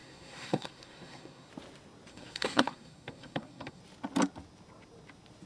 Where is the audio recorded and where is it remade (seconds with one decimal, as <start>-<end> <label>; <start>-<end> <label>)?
0.0-1.5 remade; 1.5-2.1 recorded; 2.1-3.8 remade; 3.8-5.5 recorded